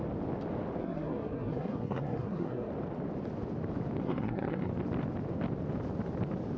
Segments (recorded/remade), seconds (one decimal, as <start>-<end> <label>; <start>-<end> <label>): 0.0-0.8 recorded; 0.8-2.7 remade; 2.7-4.0 recorded; 4.0-4.7 remade; 4.7-6.6 recorded